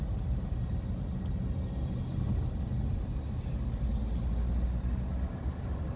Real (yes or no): yes